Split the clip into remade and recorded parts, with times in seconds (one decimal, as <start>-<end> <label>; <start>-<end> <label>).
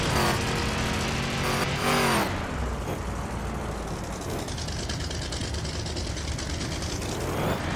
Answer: 0.0-7.8 recorded